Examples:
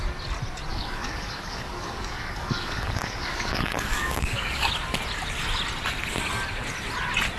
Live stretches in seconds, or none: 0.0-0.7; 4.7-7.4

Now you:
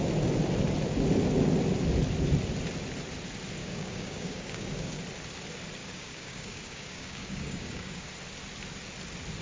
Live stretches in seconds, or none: 0.0-3.6; 5.0-5.8; 8.1-9.4

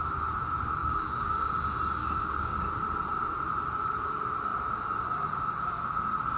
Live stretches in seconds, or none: 0.0-0.8; 1.5-2.0; 2.7-6.4

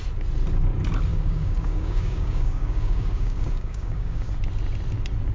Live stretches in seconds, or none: 0.0-1.1; 4.3-5.3

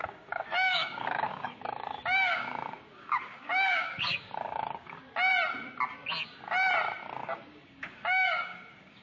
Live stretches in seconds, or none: 5.0-7.2

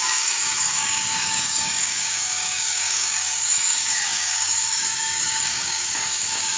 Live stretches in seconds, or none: none

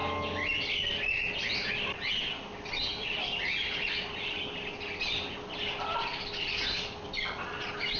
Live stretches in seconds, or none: 0.0-8.0